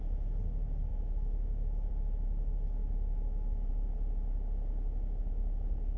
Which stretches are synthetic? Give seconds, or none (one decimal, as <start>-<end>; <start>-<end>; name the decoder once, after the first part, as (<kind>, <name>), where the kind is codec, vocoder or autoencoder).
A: 0.9-1.9 (autoencoder, DAC-VAE); 2.8-3.7